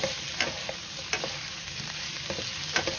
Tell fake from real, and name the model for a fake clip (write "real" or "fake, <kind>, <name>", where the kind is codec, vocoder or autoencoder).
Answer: real